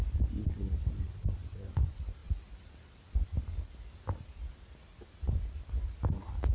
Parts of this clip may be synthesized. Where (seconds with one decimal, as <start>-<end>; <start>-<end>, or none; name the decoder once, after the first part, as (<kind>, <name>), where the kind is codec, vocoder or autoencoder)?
none